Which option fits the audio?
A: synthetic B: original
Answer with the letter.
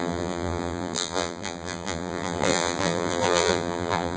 A